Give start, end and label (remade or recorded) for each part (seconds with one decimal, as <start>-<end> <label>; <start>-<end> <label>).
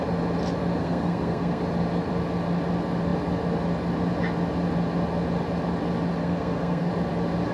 0.0-0.8 recorded; 0.8-1.6 remade; 1.6-6.2 recorded; 6.2-6.9 remade; 6.9-7.5 recorded